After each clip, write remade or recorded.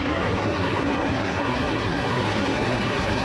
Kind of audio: remade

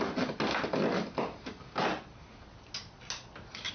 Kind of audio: recorded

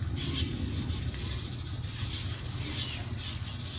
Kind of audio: recorded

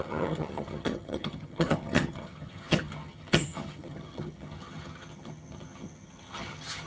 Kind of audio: remade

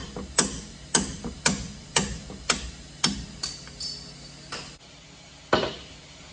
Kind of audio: recorded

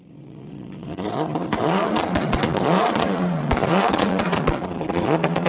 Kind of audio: remade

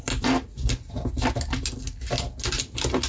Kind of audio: recorded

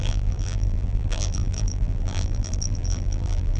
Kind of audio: remade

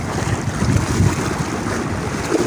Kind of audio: recorded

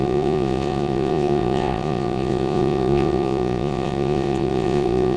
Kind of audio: remade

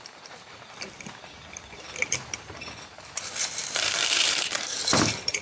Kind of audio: remade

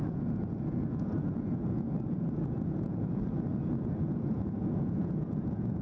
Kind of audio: remade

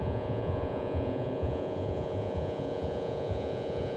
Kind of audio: remade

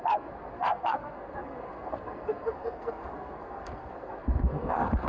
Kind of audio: remade